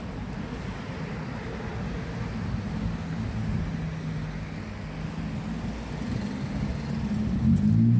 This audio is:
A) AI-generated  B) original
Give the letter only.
B